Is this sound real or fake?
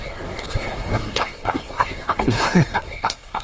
fake